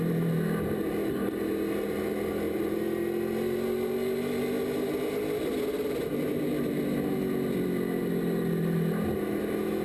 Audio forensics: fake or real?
real